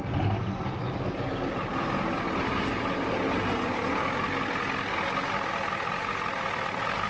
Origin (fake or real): real